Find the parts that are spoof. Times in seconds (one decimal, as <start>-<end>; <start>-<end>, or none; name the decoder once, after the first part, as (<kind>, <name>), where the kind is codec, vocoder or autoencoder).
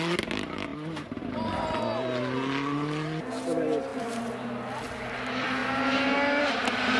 none